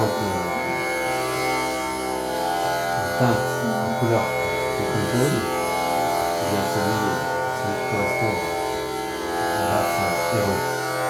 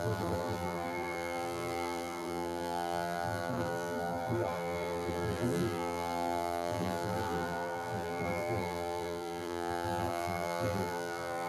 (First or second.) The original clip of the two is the first